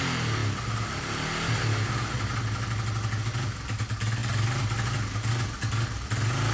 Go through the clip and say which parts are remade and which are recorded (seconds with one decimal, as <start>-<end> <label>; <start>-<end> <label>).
0.0-6.5 recorded